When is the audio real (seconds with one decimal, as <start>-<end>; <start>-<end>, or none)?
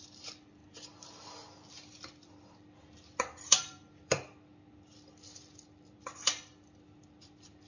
0.6-1.7